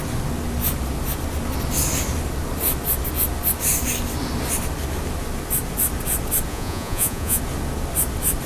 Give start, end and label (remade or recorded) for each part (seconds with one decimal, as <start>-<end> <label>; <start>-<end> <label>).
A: 0.0-6.5 recorded; 6.5-7.4 remade; 7.4-8.5 recorded